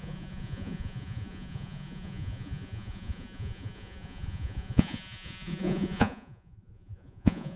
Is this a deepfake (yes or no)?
yes